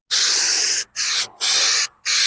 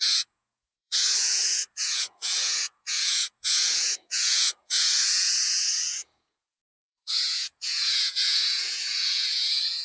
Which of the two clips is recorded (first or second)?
first